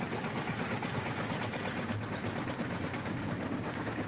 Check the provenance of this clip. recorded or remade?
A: recorded